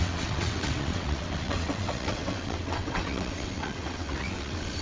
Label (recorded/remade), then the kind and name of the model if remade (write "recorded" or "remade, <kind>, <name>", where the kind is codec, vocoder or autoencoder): remade, vocoder, WaveNeXt